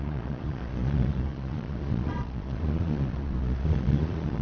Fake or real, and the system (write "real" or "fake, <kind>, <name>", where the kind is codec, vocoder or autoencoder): fake, vocoder, Vocos